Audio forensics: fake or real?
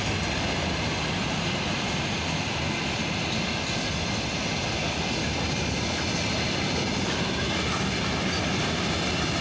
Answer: real